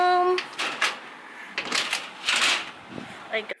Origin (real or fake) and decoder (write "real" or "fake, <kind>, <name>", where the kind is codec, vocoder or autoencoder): real